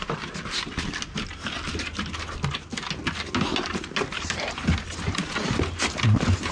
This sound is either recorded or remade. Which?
recorded